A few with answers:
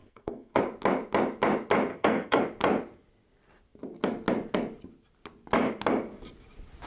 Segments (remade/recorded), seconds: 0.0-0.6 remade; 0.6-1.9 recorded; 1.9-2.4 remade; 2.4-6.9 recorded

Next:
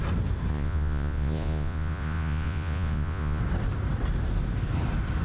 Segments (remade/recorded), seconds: 0.0-0.5 recorded; 0.5-3.4 remade; 3.4-5.2 recorded

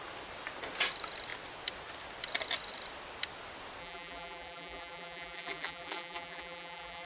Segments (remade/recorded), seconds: 0.0-3.8 recorded; 3.8-7.1 remade

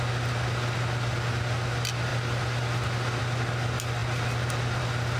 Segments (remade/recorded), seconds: 0.0-5.2 recorded

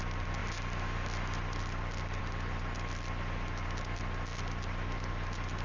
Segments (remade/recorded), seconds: 0.0-5.6 recorded

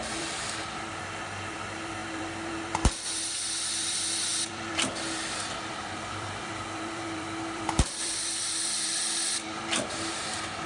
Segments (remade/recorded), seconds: 0.0-10.7 remade